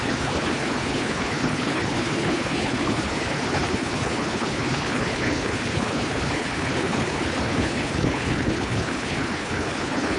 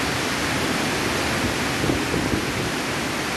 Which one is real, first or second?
second